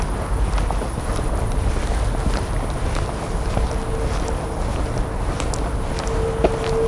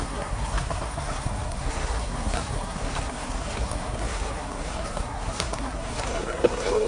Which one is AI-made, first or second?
second